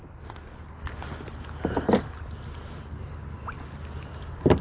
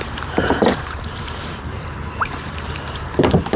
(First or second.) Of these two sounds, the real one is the first